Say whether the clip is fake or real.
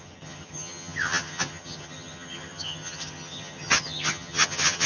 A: fake